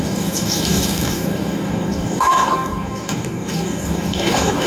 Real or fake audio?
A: fake